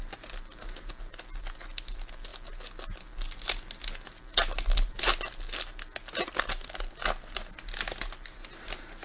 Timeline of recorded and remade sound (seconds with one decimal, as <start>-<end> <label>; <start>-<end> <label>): 0.0-9.0 recorded